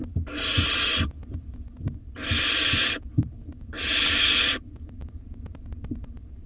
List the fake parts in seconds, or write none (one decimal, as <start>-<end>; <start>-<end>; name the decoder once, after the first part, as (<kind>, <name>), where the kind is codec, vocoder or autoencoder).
none